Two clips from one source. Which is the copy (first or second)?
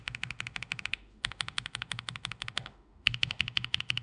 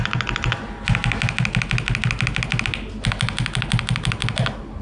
first